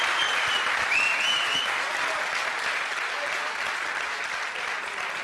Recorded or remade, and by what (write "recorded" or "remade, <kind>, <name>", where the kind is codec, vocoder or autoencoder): recorded